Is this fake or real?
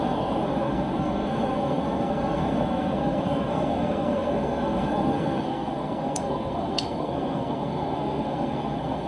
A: fake